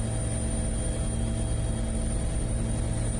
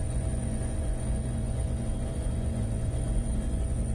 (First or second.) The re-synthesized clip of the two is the second